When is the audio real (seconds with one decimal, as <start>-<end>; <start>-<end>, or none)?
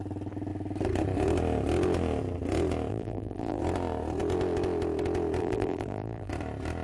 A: 0.0-2.9; 3.6-5.4; 6.3-6.8